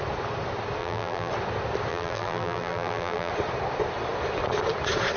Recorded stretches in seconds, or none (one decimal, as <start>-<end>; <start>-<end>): 0.0-0.8; 1.3-1.9; 3.3-5.2

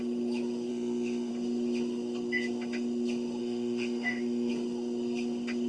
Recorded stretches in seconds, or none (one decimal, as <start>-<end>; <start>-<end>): 0.0-0.7; 1.3-3.4; 4.5-5.7

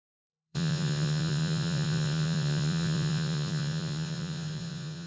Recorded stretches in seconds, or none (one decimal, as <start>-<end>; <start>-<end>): none